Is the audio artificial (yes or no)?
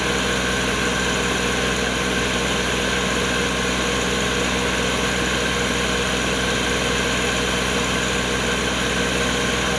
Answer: no